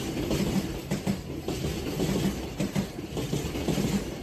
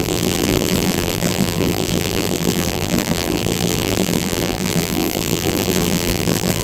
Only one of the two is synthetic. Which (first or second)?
second